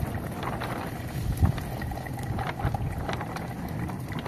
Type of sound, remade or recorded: recorded